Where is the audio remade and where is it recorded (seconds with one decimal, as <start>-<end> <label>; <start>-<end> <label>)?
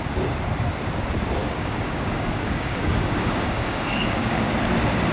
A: 0.0-1.4 recorded; 1.4-4.5 remade; 4.5-5.1 recorded